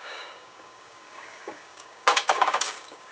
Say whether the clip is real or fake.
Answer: fake